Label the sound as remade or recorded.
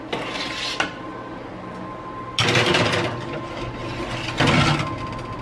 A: recorded